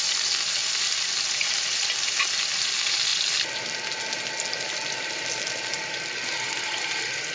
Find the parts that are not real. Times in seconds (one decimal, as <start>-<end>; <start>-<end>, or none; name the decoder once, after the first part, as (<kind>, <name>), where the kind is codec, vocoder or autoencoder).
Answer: none